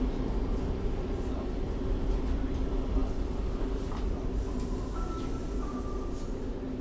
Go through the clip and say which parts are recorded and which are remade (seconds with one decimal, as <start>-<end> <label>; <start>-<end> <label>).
0.0-6.8 recorded